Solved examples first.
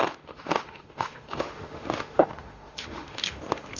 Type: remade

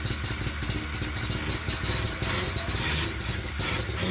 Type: recorded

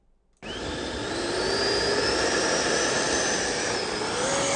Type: recorded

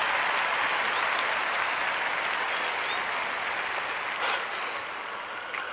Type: recorded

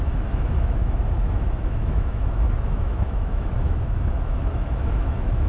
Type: remade